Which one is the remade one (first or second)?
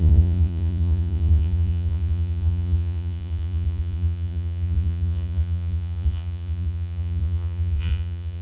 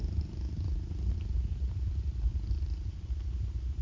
first